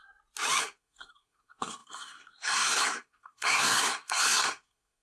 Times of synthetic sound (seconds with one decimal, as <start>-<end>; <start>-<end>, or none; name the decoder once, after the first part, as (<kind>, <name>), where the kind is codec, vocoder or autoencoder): 0.6-5.0 (codec, SNAC)